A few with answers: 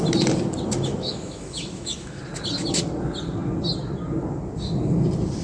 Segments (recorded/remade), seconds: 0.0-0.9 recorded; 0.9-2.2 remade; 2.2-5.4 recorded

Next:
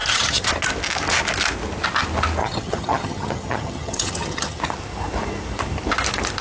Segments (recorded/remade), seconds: 0.0-0.5 remade; 0.5-2.4 recorded; 2.4-4.6 remade; 4.6-6.4 recorded

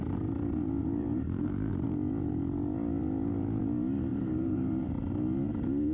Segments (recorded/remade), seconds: 0.0-0.8 recorded; 0.8-1.7 remade; 1.7-4.1 recorded; 4.1-5.0 remade; 5.0-5.9 recorded

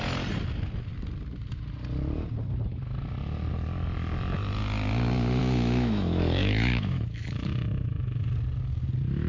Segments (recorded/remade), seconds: 0.0-5.4 recorded; 5.4-8.2 remade; 8.2-9.3 recorded

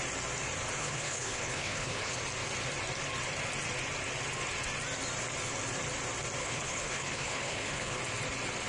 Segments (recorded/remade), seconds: 0.0-0.8 recorded; 0.8-2.2 remade; 2.2-6.4 recorded; 6.4-8.0 remade; 8.0-8.7 recorded